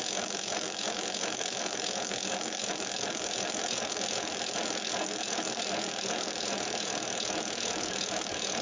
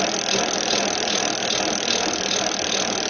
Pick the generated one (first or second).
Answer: first